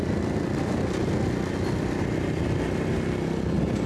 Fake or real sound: real